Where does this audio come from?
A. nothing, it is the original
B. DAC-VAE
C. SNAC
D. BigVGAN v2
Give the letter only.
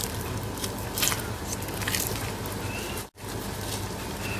A